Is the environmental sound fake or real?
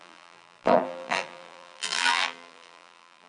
fake